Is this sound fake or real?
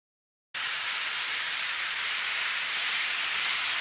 real